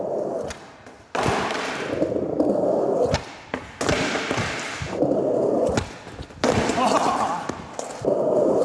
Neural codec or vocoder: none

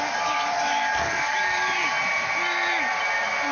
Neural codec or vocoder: none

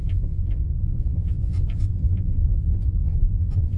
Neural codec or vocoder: vocoder, Vocos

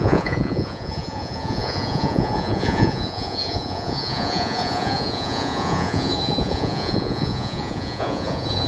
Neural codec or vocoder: vocoder, Vocos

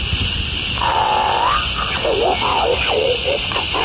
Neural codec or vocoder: vocoder, Vocos